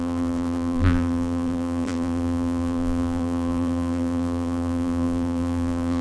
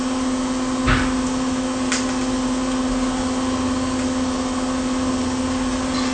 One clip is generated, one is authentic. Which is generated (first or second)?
first